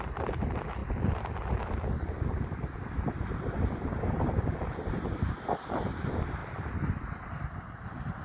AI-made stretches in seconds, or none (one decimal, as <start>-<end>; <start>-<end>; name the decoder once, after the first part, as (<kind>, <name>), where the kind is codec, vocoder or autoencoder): none